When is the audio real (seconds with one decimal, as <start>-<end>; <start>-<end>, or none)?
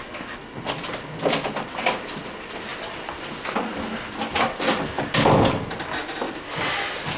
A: 0.0-7.2